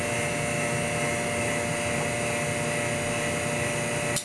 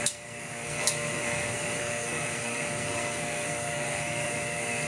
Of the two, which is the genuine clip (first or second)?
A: first